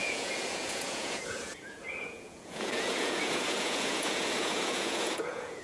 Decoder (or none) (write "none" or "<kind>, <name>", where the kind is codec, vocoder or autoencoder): vocoder, Vocos